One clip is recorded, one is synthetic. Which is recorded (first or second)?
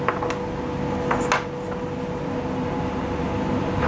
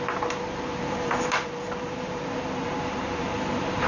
first